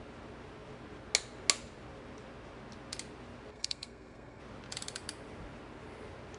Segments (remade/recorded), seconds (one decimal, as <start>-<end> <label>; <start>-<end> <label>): 0.0-3.5 recorded; 3.5-4.4 remade; 4.4-6.4 recorded

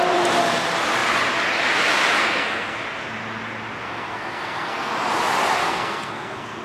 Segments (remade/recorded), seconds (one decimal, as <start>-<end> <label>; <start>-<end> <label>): 0.0-2.2 recorded; 2.2-2.8 remade; 2.8-3.8 recorded; 3.8-4.9 remade; 4.9-5.6 recorded; 5.6-6.6 remade